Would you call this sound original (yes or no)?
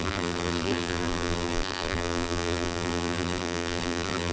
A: no